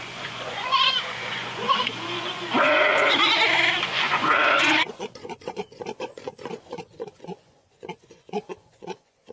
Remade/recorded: remade